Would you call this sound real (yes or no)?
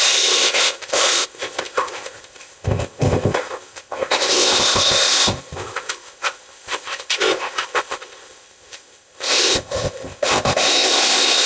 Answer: no